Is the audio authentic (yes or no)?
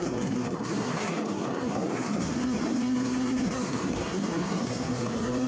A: no